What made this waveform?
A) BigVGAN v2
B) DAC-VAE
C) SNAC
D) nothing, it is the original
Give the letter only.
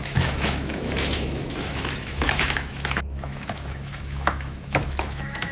B